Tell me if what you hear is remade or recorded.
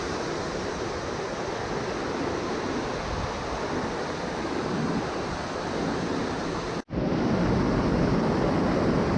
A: recorded